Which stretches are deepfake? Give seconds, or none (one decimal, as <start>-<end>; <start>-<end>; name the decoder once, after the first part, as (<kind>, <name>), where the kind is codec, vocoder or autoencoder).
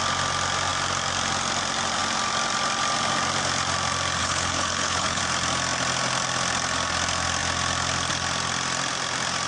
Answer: 4.2-5.2 (codec, HILCodec)